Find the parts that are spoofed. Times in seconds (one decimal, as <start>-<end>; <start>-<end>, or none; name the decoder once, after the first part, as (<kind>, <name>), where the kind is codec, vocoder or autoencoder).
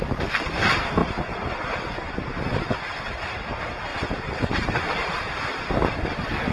1.0-1.5 (vocoder, BigVGAN v2); 3.9-5.1